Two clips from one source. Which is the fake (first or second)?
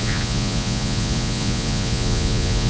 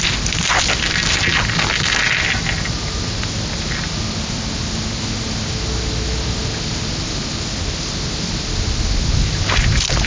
first